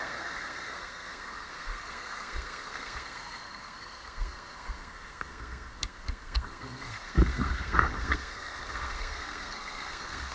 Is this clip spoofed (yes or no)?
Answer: yes